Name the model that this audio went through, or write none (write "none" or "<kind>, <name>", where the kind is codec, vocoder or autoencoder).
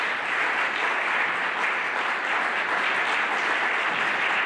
none